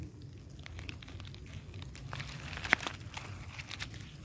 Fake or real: fake